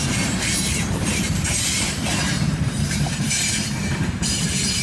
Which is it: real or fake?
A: fake